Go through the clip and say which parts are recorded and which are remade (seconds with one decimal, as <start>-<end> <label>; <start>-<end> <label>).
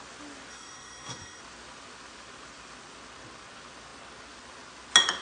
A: 0.0-0.5 recorded; 0.5-1.4 remade; 1.4-5.2 recorded